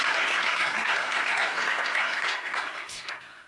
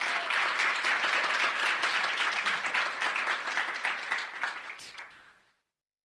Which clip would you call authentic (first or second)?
second